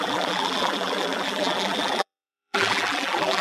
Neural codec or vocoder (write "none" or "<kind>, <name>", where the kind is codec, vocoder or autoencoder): vocoder, BigVGAN v2